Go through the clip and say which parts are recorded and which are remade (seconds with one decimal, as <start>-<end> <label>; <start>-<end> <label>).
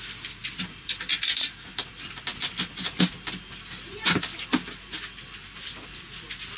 0.0-6.6 recorded